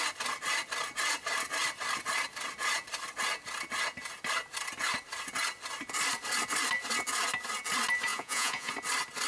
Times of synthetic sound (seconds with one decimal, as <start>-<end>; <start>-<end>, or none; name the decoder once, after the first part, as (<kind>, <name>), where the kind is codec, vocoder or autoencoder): 8.1-8.7 (vocoder, Vocos)

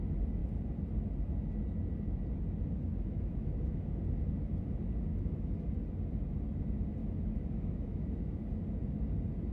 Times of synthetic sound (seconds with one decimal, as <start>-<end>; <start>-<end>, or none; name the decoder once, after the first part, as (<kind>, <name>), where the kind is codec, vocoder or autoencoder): 2.9-4.0 (autoencoder, DAC-VAE); 5.1-5.7; 7.0-8.3

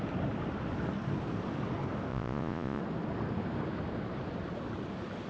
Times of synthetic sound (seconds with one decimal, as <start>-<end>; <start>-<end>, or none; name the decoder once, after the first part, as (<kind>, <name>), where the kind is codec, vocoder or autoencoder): 2.1-2.8 (vocoder, Vocos)

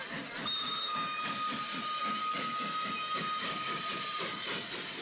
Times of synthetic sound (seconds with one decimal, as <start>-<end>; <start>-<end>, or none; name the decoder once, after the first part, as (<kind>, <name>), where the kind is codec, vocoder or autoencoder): 0.8-1.3 (codec, DAC); 2.2-3.8